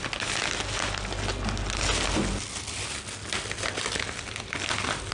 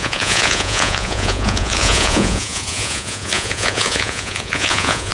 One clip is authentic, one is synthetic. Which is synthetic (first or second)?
second